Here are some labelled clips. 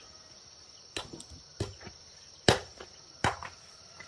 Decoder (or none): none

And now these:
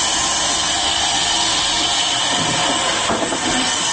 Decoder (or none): none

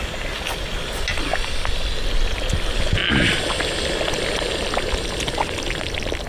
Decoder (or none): none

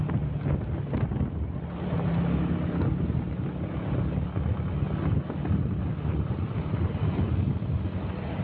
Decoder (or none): none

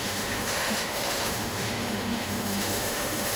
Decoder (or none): autoencoder, DAC-VAE